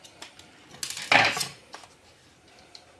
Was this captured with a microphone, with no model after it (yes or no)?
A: yes